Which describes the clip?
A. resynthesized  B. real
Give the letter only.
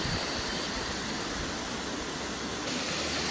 B